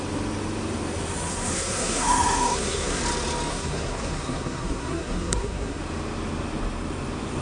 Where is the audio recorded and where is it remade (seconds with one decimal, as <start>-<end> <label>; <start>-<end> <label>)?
0.0-1.3 recorded; 1.3-3.0 remade; 3.0-3.5 recorded; 3.5-5.8 remade; 5.8-7.4 recorded